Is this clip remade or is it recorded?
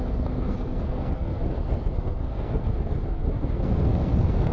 remade